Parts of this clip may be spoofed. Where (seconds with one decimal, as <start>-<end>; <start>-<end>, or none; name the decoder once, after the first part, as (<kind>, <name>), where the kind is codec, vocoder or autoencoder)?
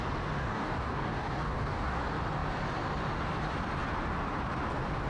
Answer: 0.4-2.0 (codec, DAC)